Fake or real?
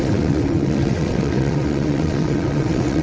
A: fake